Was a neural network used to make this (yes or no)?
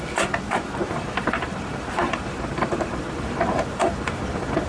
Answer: yes